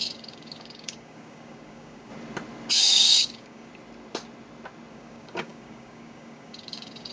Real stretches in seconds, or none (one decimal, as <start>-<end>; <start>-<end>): 2.1-2.7; 3.7-4.9